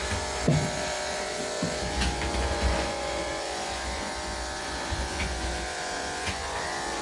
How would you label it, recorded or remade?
remade